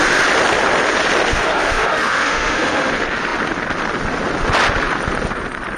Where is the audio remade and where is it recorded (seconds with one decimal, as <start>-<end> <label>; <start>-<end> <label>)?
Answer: 0.0-1.3 recorded; 1.3-2.9 remade; 2.9-5.8 recorded